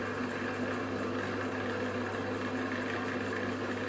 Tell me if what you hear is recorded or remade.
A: recorded